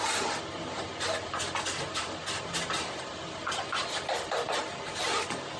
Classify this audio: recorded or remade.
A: recorded